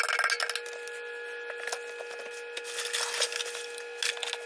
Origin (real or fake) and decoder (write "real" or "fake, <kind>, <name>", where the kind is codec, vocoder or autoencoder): real